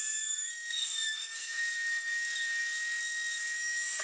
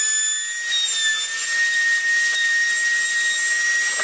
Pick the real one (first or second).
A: second